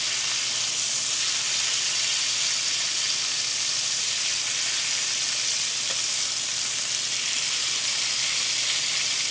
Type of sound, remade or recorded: recorded